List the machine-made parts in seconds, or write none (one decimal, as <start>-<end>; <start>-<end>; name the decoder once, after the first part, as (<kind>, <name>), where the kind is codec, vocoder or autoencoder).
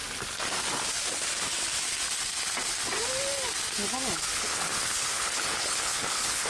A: 4.3-6.5 (codec, HILCodec)